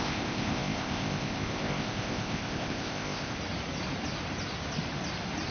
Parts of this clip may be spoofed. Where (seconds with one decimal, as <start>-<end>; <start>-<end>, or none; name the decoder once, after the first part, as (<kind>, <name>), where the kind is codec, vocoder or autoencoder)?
0.0-3.4 (codec, ZipCodec)